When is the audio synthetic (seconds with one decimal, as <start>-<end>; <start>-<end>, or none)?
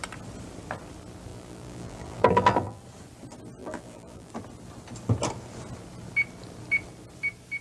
1.3-2.8; 3.6-4.3